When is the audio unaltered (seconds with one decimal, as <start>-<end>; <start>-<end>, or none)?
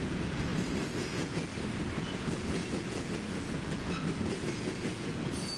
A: 0.5-1.0; 1.5-2.0